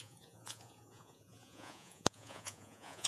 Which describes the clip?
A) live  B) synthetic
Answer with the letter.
B